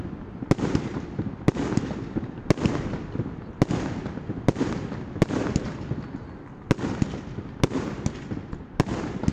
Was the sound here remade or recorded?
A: recorded